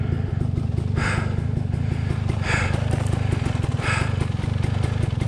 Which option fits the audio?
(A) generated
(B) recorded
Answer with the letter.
B